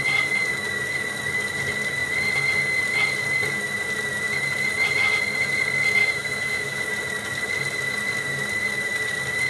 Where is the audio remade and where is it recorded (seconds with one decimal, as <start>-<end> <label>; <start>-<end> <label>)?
0.0-6.0 recorded; 6.0-6.8 remade; 6.8-9.5 recorded